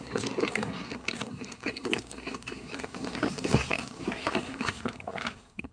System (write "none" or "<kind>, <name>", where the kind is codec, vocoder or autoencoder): codec, SNAC